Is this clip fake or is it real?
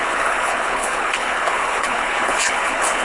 fake